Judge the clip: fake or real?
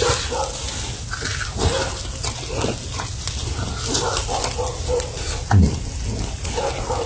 real